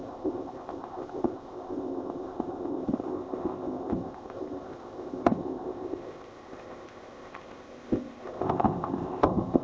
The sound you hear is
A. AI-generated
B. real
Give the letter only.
A